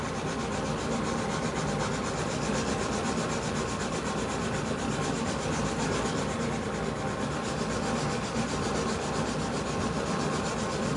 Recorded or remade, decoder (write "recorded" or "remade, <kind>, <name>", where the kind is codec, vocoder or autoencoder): recorded